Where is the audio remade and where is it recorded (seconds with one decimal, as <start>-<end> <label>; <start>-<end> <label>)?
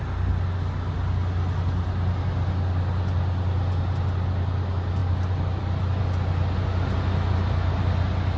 0.0-5.0 recorded; 5.0-6.0 remade; 6.0-8.4 recorded